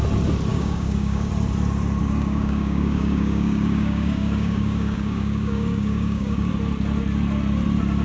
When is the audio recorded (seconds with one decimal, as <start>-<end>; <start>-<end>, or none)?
0.0-0.5; 1.3-2.0; 6.5-8.0